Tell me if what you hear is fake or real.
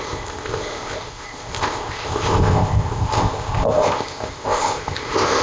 fake